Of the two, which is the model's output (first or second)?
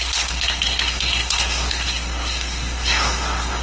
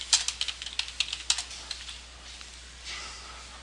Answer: first